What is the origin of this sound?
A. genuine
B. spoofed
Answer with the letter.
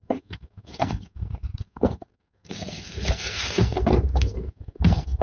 B